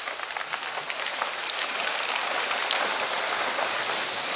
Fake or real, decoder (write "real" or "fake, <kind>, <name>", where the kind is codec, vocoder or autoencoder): real